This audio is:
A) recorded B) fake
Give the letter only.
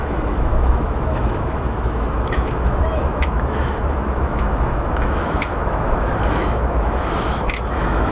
B